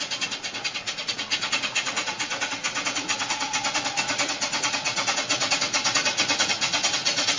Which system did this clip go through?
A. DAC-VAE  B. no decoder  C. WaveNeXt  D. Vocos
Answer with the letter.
D